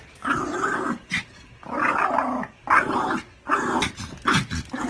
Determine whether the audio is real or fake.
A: real